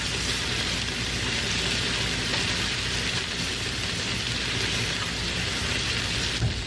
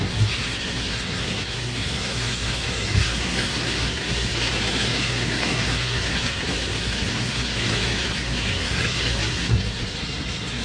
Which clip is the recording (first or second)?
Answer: first